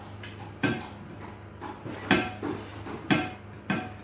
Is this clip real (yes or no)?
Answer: yes